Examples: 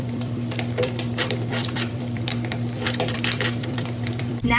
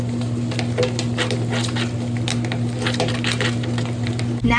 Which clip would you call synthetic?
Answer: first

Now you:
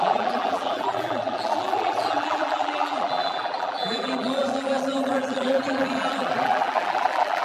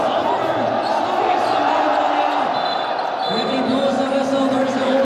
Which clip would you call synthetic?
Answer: first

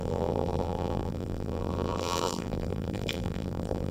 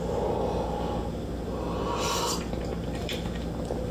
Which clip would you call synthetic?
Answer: first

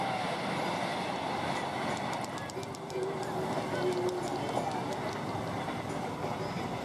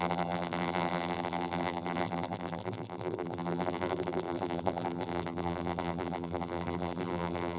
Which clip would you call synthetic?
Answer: second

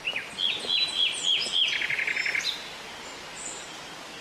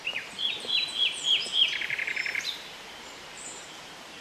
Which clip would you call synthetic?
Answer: second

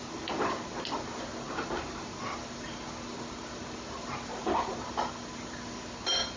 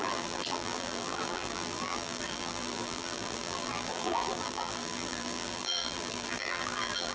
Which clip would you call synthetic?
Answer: second